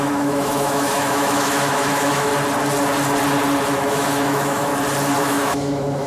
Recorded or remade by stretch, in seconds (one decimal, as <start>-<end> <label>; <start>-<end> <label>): 0.0-2.3 remade; 2.3-3.9 recorded; 3.9-4.7 remade; 4.7-5.2 recorded; 5.2-6.1 remade